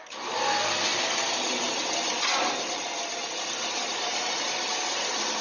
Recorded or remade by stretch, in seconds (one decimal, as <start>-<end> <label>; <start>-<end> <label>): 0.0-5.4 recorded